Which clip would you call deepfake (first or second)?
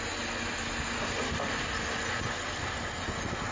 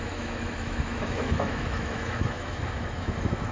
second